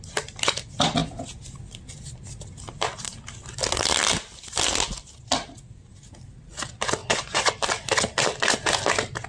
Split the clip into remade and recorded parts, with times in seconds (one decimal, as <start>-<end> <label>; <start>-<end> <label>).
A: 0.0-7.0 recorded; 7.0-7.5 remade; 7.5-9.3 recorded